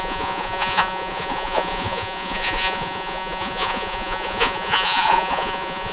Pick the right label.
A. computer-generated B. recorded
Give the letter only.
A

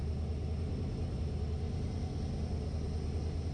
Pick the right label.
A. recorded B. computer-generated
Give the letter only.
A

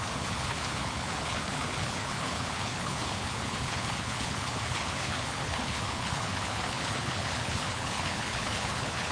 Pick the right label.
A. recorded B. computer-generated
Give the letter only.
B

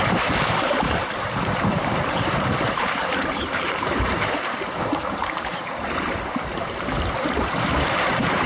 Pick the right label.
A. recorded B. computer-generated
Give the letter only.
B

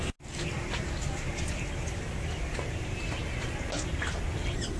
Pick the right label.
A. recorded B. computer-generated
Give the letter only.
A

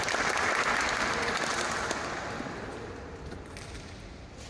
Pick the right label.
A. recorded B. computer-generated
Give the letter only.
A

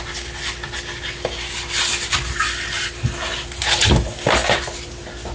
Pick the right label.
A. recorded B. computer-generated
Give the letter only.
A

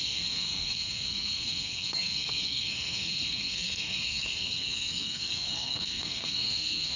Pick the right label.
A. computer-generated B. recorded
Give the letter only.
A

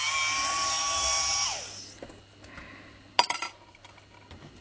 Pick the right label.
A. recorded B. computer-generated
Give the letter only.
A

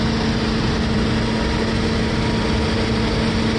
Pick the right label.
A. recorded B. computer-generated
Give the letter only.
A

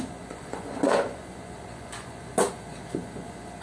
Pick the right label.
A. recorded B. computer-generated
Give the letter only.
B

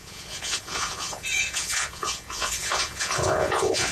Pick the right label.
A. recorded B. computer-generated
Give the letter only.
B